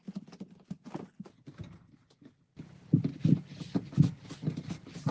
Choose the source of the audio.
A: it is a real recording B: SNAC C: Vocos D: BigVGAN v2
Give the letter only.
A